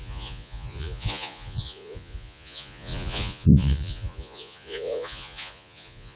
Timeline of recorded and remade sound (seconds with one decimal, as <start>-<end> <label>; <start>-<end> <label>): 0.0-6.2 remade